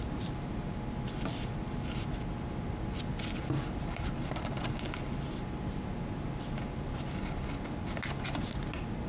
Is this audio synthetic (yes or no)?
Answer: no